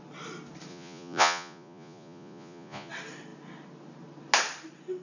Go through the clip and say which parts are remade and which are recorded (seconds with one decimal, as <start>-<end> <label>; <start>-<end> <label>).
0.0-0.7 recorded; 0.7-2.9 remade; 2.9-5.0 recorded